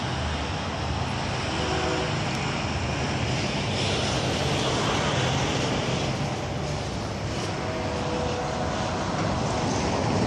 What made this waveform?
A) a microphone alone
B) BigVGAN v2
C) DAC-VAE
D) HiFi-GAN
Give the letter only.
A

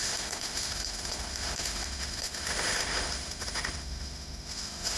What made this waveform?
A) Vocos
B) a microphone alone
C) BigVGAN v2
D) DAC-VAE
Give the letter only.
D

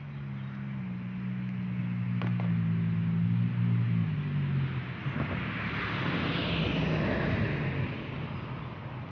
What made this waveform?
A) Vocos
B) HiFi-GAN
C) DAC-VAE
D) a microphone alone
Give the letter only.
D